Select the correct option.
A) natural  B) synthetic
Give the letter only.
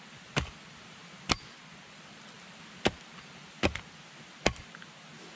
A